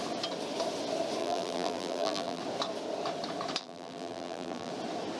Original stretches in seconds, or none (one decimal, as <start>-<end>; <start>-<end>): 0.0-1.2; 2.4-3.6; 4.7-5.2

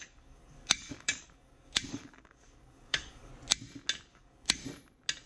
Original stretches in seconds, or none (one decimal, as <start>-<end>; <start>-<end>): 3.3-4.1; 4.6-5.3

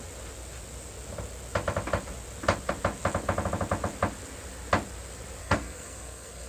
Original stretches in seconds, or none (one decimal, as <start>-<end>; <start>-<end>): 0.0-5.4

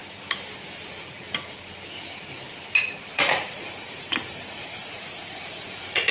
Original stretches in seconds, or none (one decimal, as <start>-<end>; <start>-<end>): 0.0-2.9